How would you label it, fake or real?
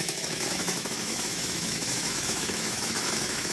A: fake